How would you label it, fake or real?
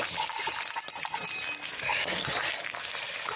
real